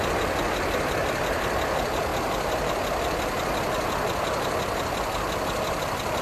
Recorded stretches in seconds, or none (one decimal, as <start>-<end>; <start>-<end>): 0.0-6.2